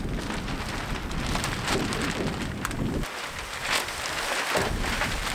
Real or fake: real